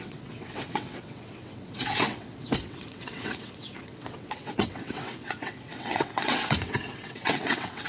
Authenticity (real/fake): fake